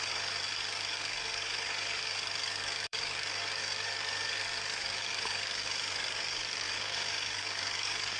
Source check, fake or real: fake